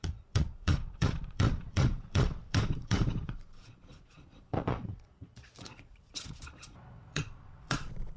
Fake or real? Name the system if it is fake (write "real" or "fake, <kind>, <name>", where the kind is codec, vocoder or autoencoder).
fake, vocoder, Vocos